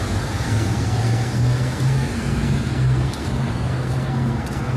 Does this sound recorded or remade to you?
remade